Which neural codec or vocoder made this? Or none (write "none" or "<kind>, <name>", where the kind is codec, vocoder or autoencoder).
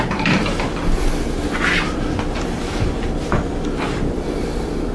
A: vocoder, BigVGAN v2